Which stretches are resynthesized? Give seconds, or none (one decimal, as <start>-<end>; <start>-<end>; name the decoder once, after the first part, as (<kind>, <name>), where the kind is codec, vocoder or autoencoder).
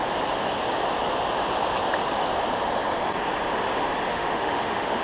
4.1-5.0 (autoencoder, DAC-VAE)